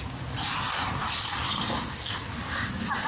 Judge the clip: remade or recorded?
recorded